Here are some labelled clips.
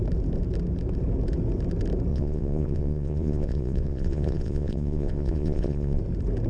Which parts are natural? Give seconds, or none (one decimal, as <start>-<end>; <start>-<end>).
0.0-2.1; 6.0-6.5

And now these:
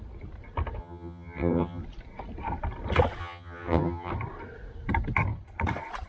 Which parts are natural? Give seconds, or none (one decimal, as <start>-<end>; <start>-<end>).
0.0-0.8; 1.8-3.2; 4.1-6.1

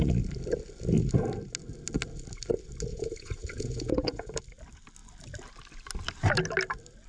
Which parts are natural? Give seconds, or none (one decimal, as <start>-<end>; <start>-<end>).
0.0-2.9; 4.3-7.1

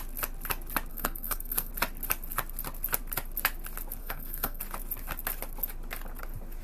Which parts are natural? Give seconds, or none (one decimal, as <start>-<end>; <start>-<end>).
0.0-0.9; 1.7-4.0; 4.6-6.6